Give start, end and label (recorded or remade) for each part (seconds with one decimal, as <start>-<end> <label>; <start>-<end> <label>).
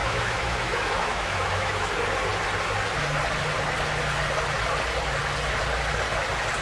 0.0-1.9 remade; 1.9-6.6 recorded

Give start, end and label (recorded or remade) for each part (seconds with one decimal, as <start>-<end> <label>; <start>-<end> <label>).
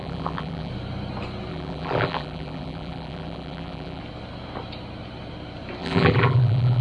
0.0-0.7 remade; 0.7-1.5 recorded; 1.5-4.0 remade; 4.0-5.8 recorded; 5.8-6.8 remade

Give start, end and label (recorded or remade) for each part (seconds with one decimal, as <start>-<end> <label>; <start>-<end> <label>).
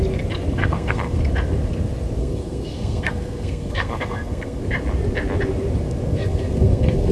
0.0-0.6 recorded; 0.6-1.2 remade; 1.2-2.2 recorded; 2.2-4.6 remade; 4.6-6.1 recorded; 6.1-7.1 remade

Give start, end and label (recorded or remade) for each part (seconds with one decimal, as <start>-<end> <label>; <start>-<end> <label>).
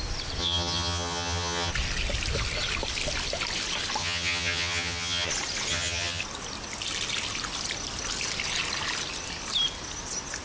0.0-0.4 recorded; 0.4-1.7 remade; 1.7-4.0 recorded; 4.0-5.3 remade; 5.3-5.7 recorded; 5.7-6.2 remade; 6.2-10.4 recorded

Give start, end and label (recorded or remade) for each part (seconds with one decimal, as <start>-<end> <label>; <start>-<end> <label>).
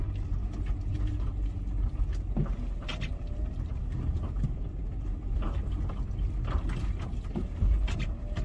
0.0-8.4 recorded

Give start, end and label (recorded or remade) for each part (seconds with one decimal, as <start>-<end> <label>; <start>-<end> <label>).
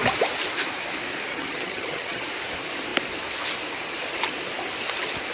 0.0-1.3 recorded; 1.3-2.2 remade; 2.2-5.3 recorded